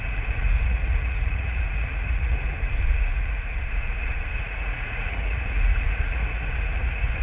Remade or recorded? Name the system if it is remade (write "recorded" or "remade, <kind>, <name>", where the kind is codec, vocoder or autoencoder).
remade, vocoder, Vocos